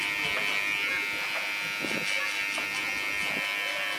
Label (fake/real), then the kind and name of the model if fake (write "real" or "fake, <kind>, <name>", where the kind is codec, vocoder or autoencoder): real